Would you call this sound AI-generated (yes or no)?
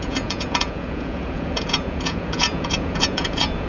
yes